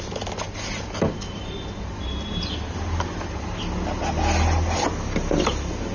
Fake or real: real